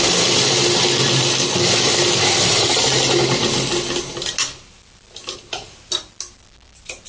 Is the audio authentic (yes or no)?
yes